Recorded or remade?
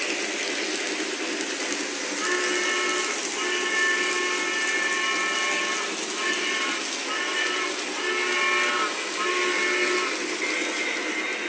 recorded